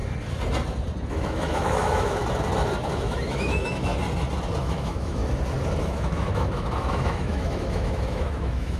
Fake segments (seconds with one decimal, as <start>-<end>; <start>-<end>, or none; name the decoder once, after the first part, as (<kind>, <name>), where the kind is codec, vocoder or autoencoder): 1.1-2.2 (autoencoder, DAC-VAE); 2.9-3.9; 4.6-5.2; 5.8-8.8